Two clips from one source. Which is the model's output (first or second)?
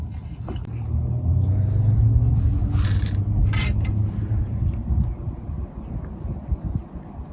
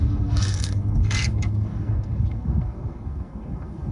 second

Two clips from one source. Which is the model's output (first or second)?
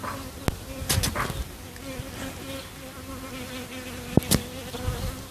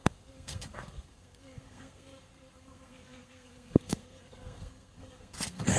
second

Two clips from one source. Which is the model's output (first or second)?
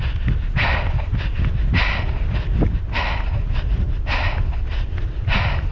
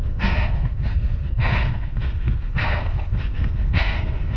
second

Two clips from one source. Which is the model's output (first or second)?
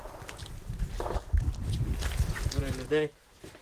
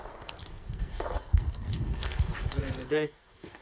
second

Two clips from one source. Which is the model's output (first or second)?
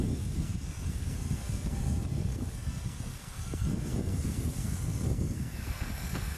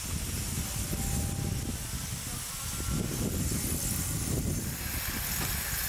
first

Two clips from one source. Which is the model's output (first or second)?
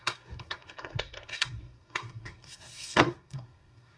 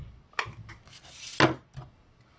first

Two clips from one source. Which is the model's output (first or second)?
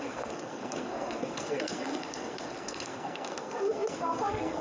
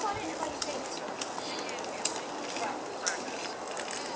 first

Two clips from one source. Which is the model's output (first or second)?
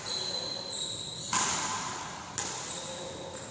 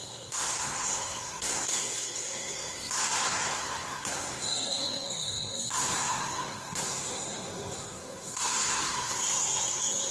second